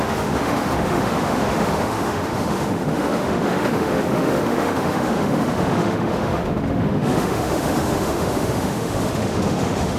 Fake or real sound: fake